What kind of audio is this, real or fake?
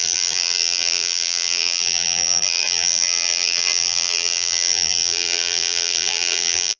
fake